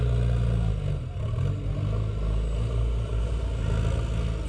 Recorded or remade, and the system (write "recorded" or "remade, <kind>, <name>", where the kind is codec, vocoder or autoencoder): recorded